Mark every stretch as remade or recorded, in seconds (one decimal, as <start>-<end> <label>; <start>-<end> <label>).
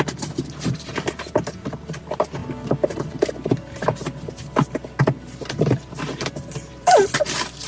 0.0-2.4 remade; 2.4-3.5 recorded; 3.5-4.0 remade; 4.0-5.0 recorded; 5.0-7.7 remade